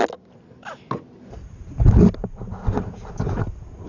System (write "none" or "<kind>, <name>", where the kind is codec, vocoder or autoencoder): none